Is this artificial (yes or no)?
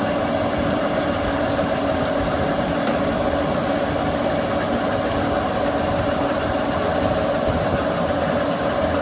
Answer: no